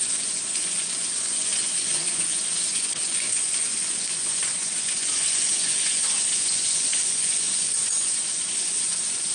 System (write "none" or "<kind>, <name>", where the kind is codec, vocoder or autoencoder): vocoder, Vocos